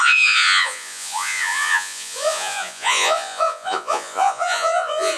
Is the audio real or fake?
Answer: fake